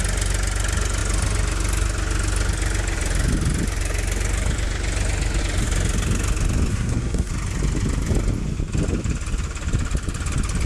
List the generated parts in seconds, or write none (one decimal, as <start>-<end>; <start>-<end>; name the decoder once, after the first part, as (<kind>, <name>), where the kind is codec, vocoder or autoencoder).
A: 6.7-7.3 (codec, SNAC)